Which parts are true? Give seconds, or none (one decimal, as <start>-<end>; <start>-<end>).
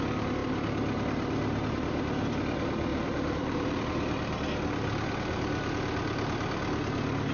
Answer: 0.0-2.9; 3.8-7.3